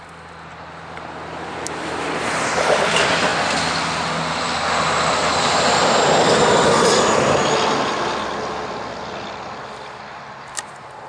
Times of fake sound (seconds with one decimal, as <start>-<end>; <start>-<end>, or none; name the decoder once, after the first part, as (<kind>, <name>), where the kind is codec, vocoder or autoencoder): none

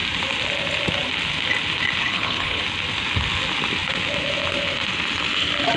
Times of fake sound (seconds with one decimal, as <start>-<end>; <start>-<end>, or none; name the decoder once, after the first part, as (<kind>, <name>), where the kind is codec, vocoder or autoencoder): 2.0-2.6 (codec, HILCodec)